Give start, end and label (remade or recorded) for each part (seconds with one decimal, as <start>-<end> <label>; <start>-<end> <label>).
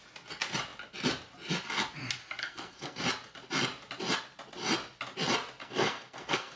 0.0-2.4 recorded; 2.4-3.0 remade; 3.0-5.6 recorded; 5.6-6.6 remade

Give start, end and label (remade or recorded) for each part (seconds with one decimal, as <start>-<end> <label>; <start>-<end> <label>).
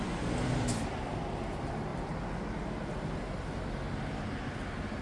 0.0-5.0 recorded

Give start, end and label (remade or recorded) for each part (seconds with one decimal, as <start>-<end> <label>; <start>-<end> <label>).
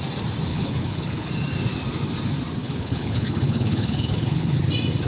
0.0-0.5 recorded; 0.5-1.3 remade; 1.3-2.6 recorded; 2.6-4.6 remade; 4.6-5.1 recorded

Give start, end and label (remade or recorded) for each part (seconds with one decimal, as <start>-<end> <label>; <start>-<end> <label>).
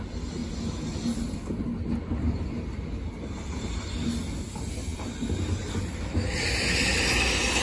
0.0-7.6 recorded